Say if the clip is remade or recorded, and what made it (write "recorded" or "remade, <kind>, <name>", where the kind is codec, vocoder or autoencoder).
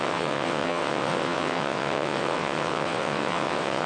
remade, vocoder, WaveNeXt